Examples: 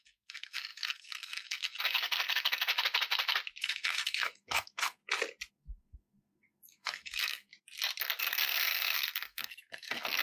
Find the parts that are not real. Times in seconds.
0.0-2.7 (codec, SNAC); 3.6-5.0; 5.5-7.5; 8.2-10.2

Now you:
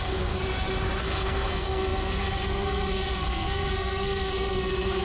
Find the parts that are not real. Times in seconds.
0.0-0.4 (codec, SNAC); 1.0-5.0

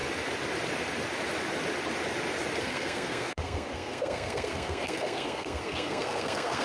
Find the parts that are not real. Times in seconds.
2.6-6.6 (codec, SNAC)

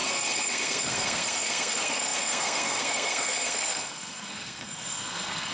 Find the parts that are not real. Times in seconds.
0.0-5.5 (codec, SNAC)

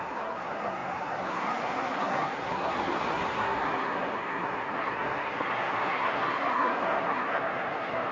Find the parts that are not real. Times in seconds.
0.0-8.1 (codec, SNAC)